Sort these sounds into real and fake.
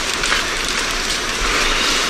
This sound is real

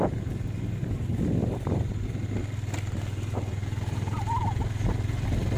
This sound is real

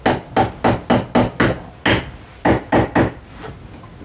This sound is real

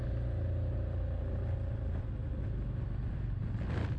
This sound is real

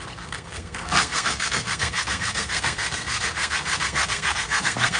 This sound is fake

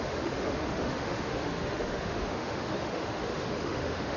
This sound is fake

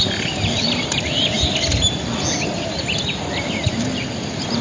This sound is real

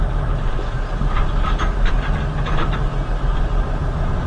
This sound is real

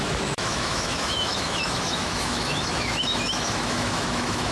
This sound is fake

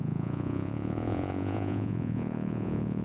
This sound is fake